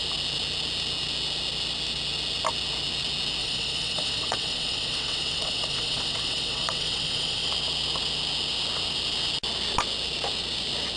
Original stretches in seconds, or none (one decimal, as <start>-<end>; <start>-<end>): 0.0-3.4; 7.5-11.0